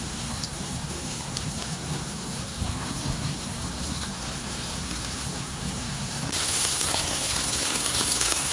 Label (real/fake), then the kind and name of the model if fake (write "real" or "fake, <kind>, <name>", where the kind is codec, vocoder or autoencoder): fake, codec, SNAC